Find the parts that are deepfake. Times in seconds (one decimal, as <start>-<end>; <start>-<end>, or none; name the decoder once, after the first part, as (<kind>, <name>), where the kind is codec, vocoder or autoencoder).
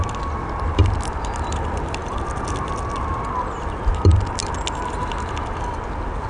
none